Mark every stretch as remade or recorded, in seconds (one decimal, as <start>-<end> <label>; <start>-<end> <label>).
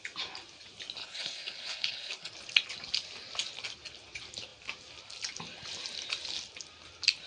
0.0-1.0 recorded; 1.0-2.3 remade; 2.3-7.3 recorded